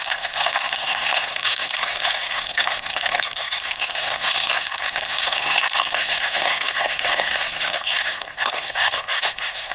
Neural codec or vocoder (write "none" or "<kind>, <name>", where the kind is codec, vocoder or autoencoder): codec, SNAC